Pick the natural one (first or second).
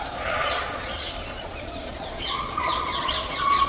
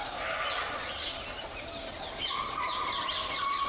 second